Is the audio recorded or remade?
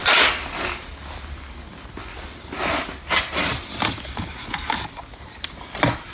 recorded